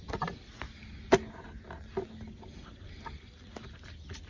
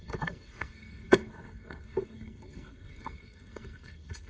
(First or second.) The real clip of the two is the first